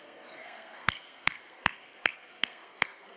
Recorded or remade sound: remade